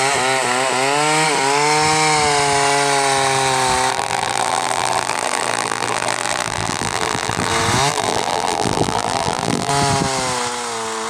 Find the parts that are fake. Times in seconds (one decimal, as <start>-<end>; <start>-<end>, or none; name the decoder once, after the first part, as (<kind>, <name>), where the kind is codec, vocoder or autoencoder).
3.9-7.5 (vocoder, BigVGAN v2); 7.9-9.7